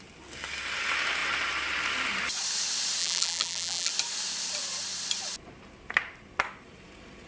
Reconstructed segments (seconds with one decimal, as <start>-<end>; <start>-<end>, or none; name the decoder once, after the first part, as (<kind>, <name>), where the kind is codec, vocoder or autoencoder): 3.0-3.9 (vocoder, BigVGAN v2)